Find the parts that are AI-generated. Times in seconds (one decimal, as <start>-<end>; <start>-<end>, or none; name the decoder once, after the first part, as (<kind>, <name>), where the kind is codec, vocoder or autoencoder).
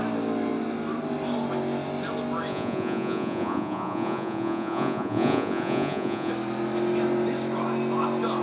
2.5-6.3 (vocoder, Vocos)